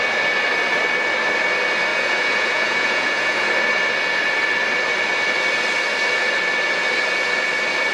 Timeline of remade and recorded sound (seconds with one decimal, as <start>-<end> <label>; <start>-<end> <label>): 0.0-1.9 recorded; 1.9-3.5 remade; 3.5-7.9 recorded